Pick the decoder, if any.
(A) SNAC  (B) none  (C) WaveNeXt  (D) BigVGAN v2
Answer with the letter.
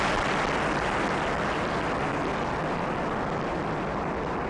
B